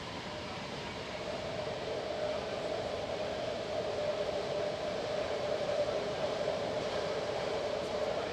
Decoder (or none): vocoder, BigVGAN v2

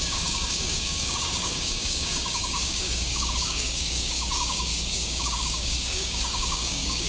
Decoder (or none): codec, DAC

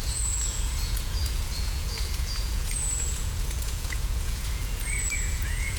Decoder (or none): vocoder, Vocos